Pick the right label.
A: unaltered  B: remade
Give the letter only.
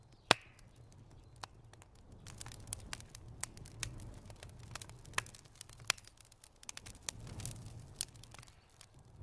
A